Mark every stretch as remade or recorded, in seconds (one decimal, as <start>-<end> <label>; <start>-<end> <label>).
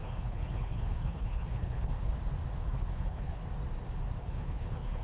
0.0-2.1 remade; 2.1-2.6 recorded; 2.6-3.4 remade; 3.4-4.2 recorded; 4.2-5.0 remade